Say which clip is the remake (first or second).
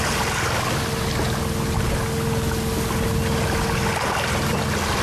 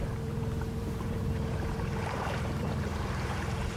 second